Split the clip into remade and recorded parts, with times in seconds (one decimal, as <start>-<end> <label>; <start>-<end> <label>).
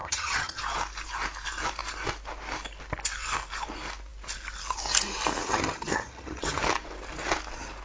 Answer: 0.0-0.6 remade; 0.6-5.4 recorded; 5.4-6.6 remade; 6.6-7.8 recorded